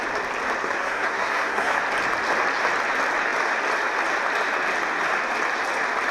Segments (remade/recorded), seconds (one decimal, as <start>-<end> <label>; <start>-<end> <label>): 0.0-0.6 recorded; 0.6-1.8 remade; 1.8-6.1 recorded